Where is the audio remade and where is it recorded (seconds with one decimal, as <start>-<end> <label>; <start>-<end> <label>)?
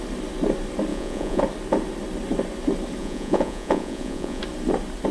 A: 0.0-0.9 recorded; 0.9-1.4 remade; 1.4-3.0 recorded; 3.0-4.4 remade; 4.4-5.1 recorded